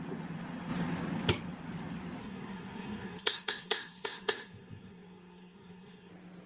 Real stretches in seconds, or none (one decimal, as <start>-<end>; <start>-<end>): 0.0-2.2; 6.1-6.5